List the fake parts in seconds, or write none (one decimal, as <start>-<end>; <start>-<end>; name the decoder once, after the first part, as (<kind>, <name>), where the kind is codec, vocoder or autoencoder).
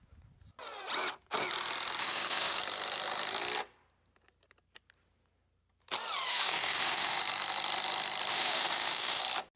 2.0-2.6 (autoencoder, DAC-VAE); 6.3-7.2; 8.3-9.2